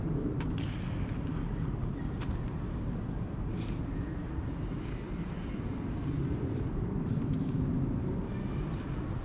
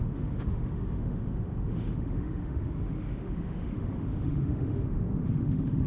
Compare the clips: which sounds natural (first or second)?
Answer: first